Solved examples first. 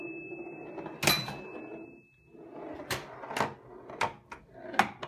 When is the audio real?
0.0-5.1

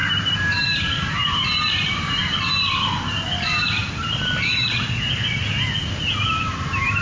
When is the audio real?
2.2-6.4

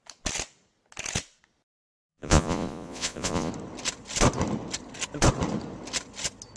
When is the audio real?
0.0-2.1; 3.5-6.6

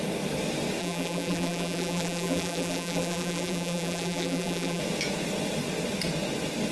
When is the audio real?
0.0-0.8; 4.8-6.7

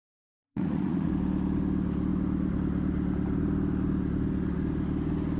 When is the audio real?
1.1-5.4

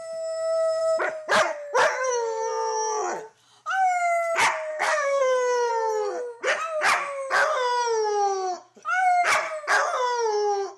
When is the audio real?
0.0-4.7; 5.7-10.8

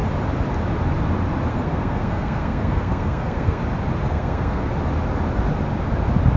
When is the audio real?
0.0-1.5; 3.6-4.0; 4.7-6.4